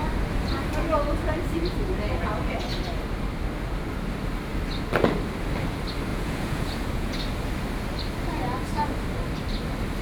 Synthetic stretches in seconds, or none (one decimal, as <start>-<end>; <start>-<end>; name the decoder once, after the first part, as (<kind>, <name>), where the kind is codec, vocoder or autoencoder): 6.1-7.2 (vocoder, Vocos)